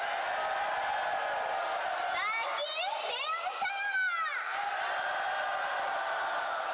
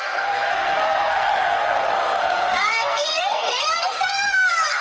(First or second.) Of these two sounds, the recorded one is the first